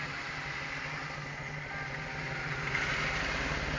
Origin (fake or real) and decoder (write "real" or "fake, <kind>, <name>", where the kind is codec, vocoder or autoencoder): real